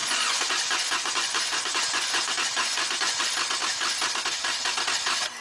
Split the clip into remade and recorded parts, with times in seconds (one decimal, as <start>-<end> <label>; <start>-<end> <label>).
0.0-3.2 remade; 3.2-5.4 recorded